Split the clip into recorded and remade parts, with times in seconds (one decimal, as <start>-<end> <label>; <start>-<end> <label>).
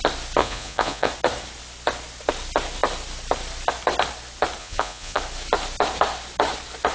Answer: 0.0-0.4 recorded; 0.4-1.1 remade; 1.1-4.6 recorded; 4.6-5.2 remade; 5.2-6.9 recorded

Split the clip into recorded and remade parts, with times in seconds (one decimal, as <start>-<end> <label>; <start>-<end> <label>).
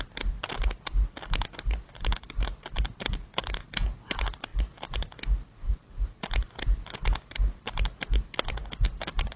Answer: 0.0-9.4 recorded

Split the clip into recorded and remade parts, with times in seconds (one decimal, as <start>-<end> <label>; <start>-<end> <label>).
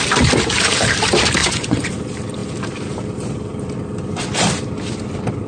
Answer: 0.0-1.4 recorded; 1.4-1.9 remade; 1.9-5.5 recorded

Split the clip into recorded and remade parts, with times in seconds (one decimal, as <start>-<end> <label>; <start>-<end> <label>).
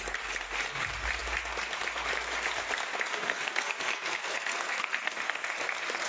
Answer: 0.0-3.1 recorded; 3.1-5.4 remade; 5.4-6.1 recorded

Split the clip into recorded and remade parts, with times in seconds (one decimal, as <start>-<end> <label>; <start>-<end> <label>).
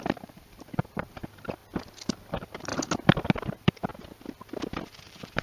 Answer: 0.0-1.6 remade; 1.6-2.3 recorded; 2.3-2.7 remade; 2.7-3.3 recorded; 3.3-3.9 remade; 3.9-5.0 recorded; 5.0-5.4 remade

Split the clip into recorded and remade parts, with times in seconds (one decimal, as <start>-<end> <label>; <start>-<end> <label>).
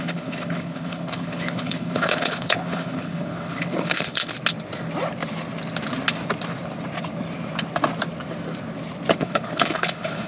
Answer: 0.0-4.3 remade; 4.3-9.2 recorded; 9.2-10.3 remade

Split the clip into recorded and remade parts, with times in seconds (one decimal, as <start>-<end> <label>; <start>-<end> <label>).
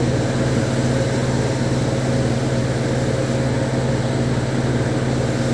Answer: 0.0-5.5 recorded